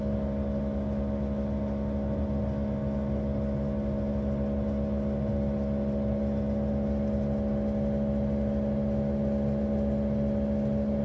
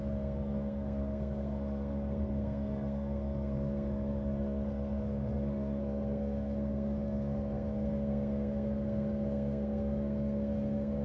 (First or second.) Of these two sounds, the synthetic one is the second